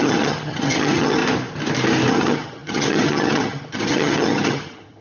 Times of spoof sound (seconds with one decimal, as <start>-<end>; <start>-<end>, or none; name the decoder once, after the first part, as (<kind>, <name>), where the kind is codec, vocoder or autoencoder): 0.0-1.2 (vocoder, HiFi-GAN); 2.1-5.0